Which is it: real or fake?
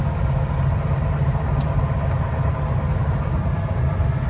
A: real